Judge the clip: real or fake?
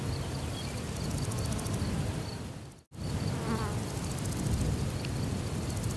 real